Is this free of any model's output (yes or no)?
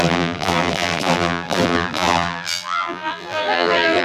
no